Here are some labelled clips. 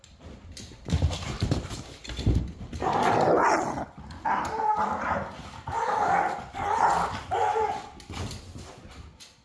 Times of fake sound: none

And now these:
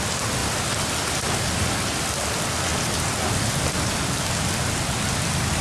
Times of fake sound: none